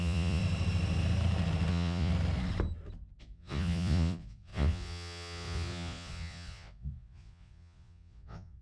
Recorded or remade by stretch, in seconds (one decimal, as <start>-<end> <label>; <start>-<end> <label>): 0.0-0.4 remade; 0.4-1.7 recorded; 1.7-2.1 remade; 2.1-3.2 recorded; 3.2-8.6 remade